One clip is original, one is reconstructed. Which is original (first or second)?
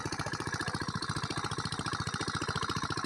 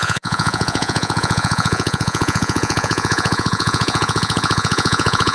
first